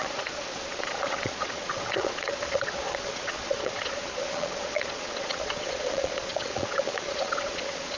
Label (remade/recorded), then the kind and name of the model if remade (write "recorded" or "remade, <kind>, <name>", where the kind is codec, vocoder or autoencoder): remade, vocoder, Vocos